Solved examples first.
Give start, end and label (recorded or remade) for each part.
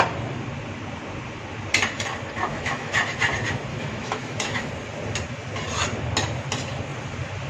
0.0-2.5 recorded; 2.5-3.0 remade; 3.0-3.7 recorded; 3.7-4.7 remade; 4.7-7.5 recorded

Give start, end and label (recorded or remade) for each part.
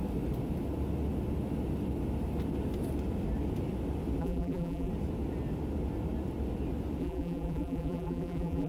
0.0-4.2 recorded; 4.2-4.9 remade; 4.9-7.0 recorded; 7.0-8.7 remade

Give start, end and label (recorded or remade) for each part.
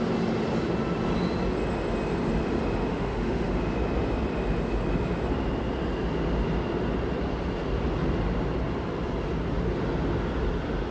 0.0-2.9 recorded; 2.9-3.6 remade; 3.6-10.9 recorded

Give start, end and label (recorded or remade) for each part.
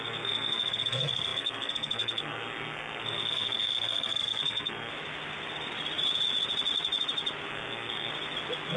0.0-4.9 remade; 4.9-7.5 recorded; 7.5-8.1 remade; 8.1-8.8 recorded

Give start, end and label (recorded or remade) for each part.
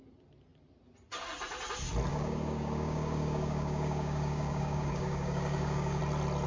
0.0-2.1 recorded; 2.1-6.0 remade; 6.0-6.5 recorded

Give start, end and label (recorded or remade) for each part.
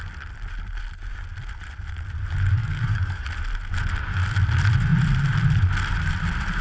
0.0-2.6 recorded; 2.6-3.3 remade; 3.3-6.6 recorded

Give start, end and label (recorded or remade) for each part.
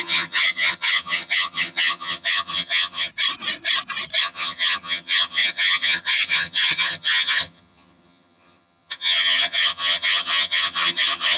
0.0-3.1 remade; 3.1-4.2 recorded; 4.2-11.4 remade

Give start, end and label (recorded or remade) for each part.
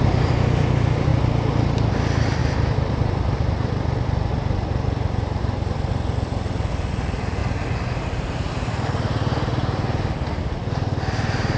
0.0-2.4 recorded; 2.4-5.9 remade; 5.9-11.6 recorded